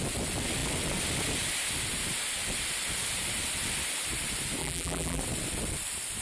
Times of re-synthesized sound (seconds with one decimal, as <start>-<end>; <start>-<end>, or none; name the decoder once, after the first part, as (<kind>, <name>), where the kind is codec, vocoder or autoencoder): 4.6-5.2 (vocoder, BigVGAN v2)